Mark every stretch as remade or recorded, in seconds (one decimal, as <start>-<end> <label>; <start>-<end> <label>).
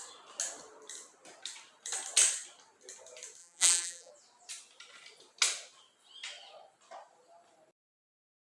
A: 0.0-3.4 recorded; 3.4-4.1 remade; 4.1-8.6 recorded